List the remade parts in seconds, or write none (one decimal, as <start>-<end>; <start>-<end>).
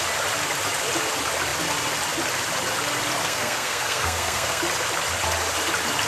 3.2-4.6